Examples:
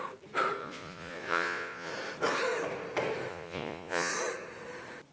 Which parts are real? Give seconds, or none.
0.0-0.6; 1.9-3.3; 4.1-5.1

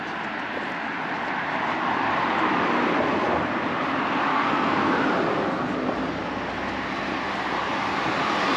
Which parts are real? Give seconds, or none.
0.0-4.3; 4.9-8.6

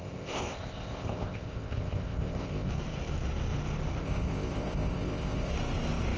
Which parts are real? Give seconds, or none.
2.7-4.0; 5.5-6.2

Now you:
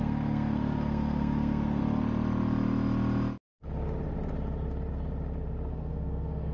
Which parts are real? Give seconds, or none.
1.8-5.7

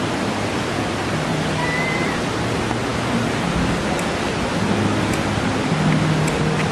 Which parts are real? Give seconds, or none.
0.0-6.7

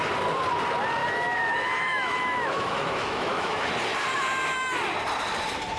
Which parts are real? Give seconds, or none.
0.0-1.0; 3.6-5.8

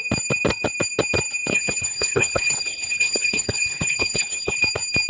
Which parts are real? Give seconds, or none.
0.0-1.5; 4.6-5.1

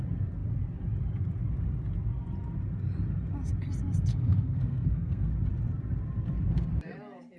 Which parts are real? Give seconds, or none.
0.0-4.1; 5.3-7.4